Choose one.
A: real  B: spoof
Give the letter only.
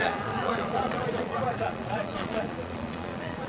B